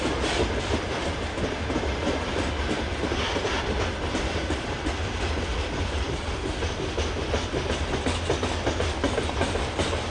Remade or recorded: recorded